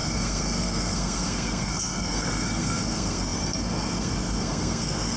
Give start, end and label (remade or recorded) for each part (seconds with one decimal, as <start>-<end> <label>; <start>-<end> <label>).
0.0-5.2 remade